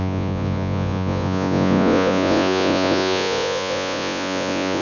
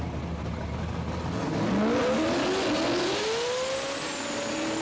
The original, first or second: second